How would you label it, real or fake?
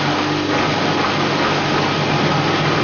real